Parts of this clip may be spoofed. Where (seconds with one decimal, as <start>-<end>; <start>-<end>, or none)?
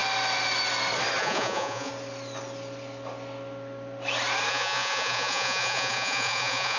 1.2-1.9; 4.5-6.8